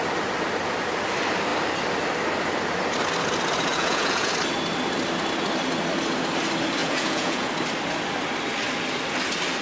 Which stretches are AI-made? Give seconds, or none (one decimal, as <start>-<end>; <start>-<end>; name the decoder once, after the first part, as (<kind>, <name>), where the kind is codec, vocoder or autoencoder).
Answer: 3.7-4.3 (vocoder, Vocos); 6.8-7.5